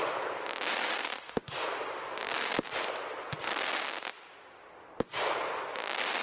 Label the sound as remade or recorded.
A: recorded